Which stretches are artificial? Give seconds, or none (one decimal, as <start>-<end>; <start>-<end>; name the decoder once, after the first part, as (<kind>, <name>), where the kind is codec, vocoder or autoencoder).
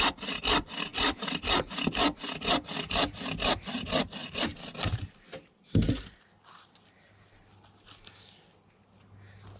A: none